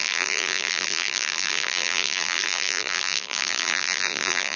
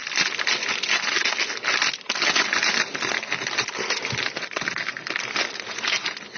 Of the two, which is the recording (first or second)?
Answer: second